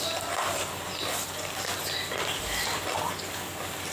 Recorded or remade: remade